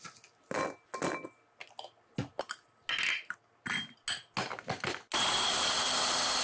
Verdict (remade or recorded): recorded